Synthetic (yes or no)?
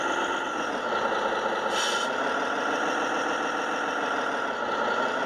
no